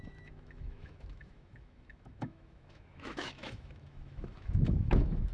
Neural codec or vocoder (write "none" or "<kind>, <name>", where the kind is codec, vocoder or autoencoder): autoencoder, DAC-VAE